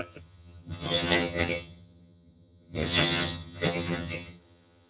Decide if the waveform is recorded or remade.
remade